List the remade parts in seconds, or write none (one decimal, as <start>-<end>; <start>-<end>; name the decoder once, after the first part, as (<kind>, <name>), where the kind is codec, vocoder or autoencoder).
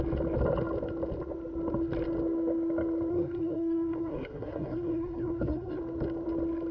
3.1-5.8 (codec, SNAC)